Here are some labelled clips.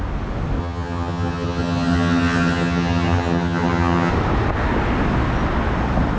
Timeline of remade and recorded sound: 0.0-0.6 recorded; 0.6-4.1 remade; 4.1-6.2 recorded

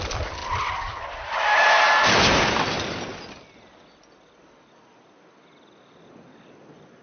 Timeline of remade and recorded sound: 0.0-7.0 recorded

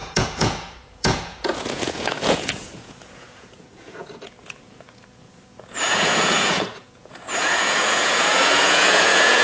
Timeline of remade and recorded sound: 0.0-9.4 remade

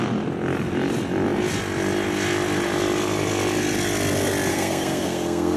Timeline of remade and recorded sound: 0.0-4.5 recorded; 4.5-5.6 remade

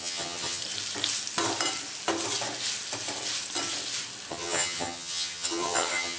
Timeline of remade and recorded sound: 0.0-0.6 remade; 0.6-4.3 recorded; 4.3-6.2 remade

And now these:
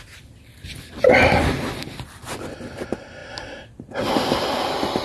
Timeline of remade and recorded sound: 0.0-5.0 recorded